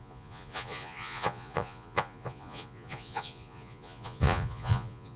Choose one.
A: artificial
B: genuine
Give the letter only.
A